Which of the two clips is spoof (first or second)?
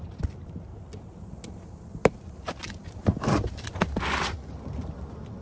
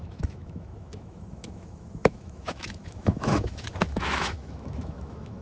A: second